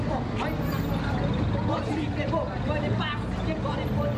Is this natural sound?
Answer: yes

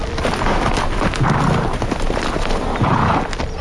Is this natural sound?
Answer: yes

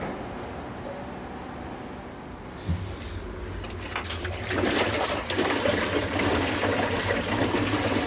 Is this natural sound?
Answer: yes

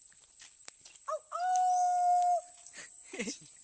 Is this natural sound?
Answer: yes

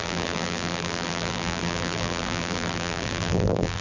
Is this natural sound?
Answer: no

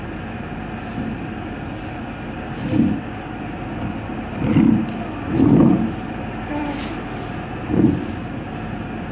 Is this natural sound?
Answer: yes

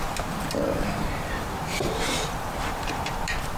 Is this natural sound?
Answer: no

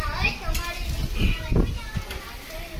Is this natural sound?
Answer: yes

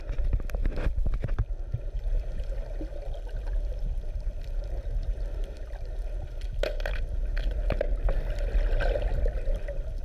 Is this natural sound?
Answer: yes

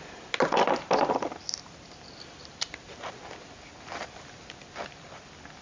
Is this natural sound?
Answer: yes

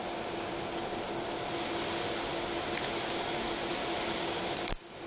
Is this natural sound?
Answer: yes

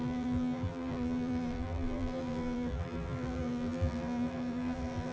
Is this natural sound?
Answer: no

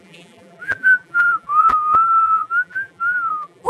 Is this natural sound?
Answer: no